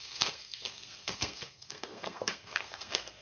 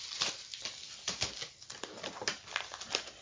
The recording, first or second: second